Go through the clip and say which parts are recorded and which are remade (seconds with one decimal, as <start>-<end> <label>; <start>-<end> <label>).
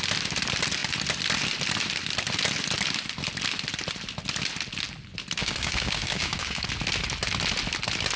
0.0-5.4 recorded; 5.4-6.7 remade; 6.7-8.2 recorded